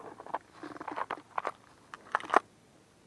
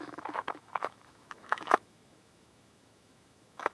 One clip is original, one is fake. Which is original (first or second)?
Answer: first